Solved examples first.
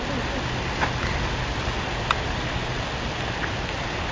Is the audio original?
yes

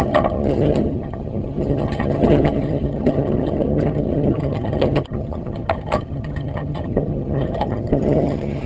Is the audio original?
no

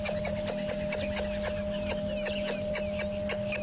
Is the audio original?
yes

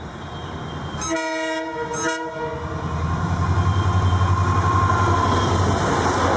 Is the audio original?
yes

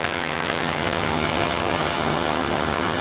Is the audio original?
no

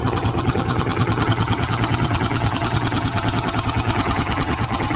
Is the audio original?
no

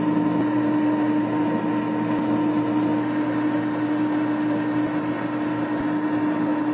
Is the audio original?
yes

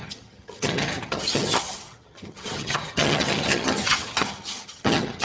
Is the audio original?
no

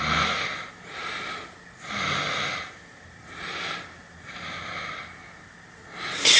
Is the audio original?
yes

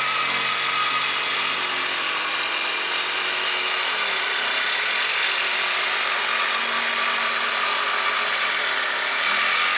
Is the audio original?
yes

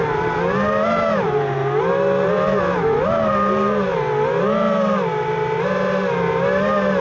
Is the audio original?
yes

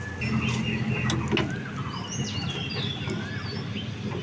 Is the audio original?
yes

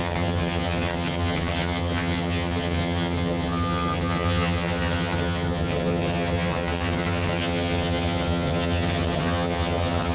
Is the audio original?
no